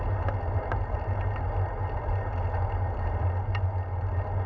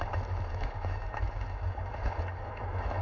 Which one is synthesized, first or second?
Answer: second